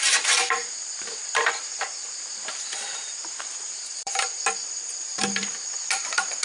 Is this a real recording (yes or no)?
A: no